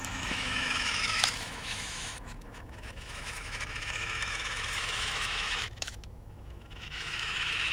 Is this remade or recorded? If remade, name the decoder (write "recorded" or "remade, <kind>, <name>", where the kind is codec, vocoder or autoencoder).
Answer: remade, autoencoder, DAC-VAE